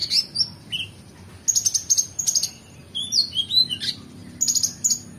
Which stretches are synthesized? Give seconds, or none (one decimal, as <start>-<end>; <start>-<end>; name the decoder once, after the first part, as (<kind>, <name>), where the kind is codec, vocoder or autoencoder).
none